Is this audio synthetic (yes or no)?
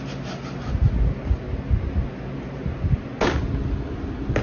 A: no